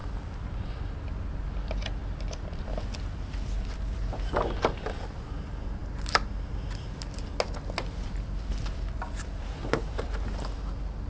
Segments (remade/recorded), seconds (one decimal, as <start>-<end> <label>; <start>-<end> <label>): 0.0-0.8 remade; 0.8-11.1 recorded